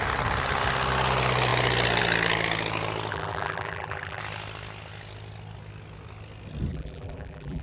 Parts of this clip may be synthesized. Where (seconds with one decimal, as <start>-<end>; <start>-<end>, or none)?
3.1-4.2; 6.7-7.6